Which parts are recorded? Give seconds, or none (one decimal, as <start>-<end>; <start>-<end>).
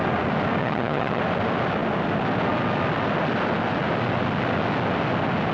0.0-0.6; 1.2-5.5